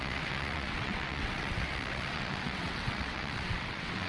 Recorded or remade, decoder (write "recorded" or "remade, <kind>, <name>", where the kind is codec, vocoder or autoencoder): remade, vocoder, WaveNeXt